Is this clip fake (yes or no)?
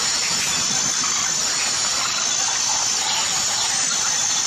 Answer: no